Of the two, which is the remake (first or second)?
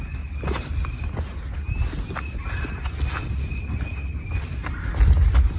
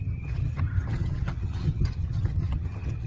second